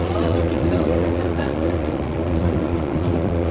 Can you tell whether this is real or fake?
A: fake